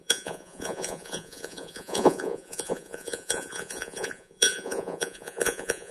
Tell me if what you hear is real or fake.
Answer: fake